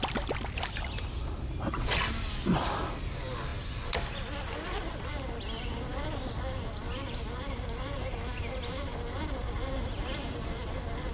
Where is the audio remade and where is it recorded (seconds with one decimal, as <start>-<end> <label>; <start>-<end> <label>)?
0.0-11.1 recorded